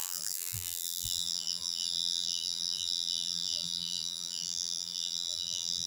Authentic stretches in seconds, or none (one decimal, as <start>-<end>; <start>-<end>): none